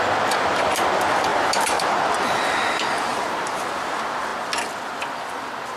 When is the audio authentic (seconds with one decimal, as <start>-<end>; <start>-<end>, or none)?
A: 0.0-1.3; 1.9-3.1; 3.6-5.8